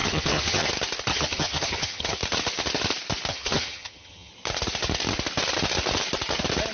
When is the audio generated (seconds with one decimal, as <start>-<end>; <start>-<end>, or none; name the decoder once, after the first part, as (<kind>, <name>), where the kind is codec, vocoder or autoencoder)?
0.0-0.7 (vocoder, HiFi-GAN); 1.1-2.2; 3.3-4.3